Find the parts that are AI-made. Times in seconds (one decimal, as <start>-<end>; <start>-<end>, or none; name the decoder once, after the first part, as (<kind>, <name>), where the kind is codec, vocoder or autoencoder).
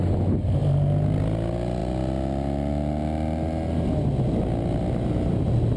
none